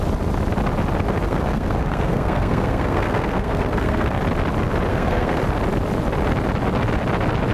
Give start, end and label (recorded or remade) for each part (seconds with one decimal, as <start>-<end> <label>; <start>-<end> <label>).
0.0-1.2 recorded; 1.2-4.2 remade; 4.2-4.9 recorded; 4.9-5.4 remade; 5.4-7.5 recorded